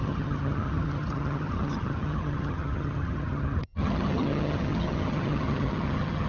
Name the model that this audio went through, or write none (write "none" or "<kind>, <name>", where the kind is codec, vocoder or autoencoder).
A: vocoder, HiFi-GAN